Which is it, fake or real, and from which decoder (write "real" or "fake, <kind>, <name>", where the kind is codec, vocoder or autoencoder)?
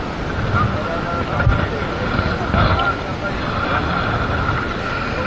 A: real